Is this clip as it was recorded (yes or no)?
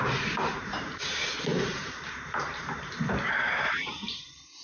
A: no